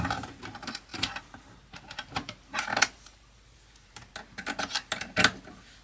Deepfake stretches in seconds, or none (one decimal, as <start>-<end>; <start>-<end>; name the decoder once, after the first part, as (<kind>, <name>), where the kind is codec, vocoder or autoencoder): 0.9-4.1 (vocoder, BigVGAN v2)